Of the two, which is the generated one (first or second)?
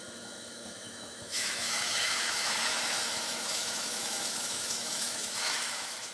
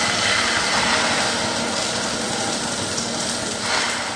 first